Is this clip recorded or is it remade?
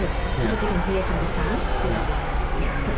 recorded